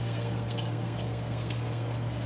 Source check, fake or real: fake